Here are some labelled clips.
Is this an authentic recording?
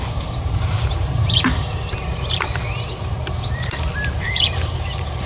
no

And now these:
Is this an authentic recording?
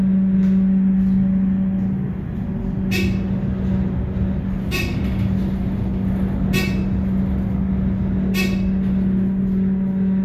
yes